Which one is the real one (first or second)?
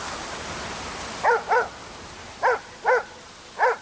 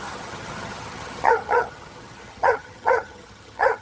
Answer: first